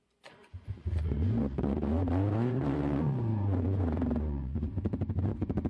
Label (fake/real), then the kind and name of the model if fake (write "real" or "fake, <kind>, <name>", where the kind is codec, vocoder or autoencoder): fake, vocoder, Vocos